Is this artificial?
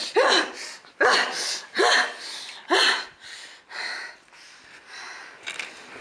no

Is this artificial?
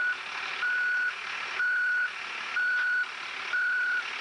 no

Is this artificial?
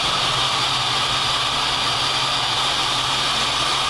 no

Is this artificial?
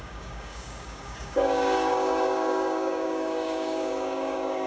yes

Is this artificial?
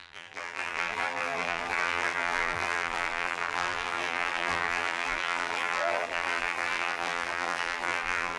yes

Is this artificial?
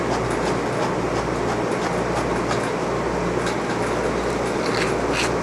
no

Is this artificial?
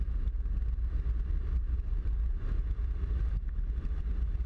no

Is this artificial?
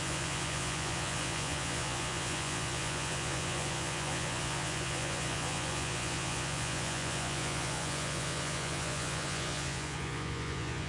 yes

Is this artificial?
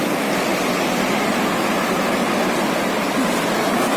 no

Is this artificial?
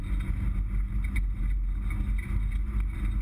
no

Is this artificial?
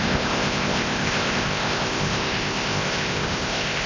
yes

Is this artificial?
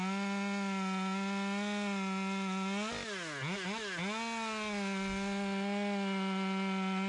no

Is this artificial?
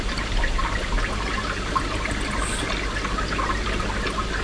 no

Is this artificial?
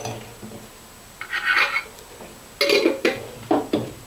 no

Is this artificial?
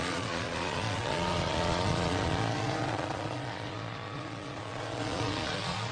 yes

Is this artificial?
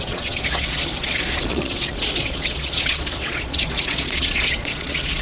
yes